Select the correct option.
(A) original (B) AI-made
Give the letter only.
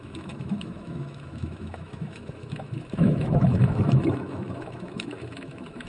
B